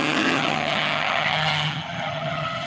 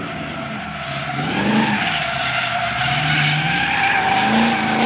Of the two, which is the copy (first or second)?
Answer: first